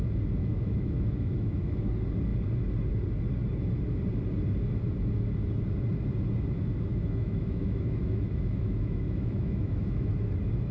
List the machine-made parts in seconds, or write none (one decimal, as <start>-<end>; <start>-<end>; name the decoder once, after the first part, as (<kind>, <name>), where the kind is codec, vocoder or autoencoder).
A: 0.4-1.9 (autoencoder, DAC-VAE); 6.9-10.1